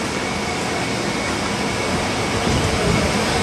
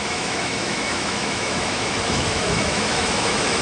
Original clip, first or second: first